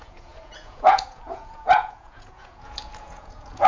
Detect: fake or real fake